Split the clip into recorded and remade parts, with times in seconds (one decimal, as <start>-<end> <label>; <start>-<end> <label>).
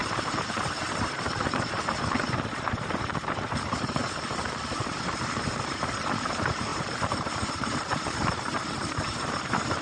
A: 0.0-4.0 remade; 4.0-4.7 recorded; 4.7-9.8 remade